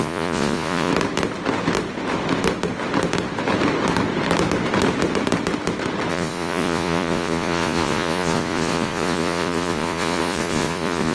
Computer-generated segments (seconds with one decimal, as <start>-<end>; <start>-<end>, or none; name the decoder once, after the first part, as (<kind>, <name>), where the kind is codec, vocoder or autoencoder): 0.0-0.9 (vocoder, Vocos); 6.1-11.1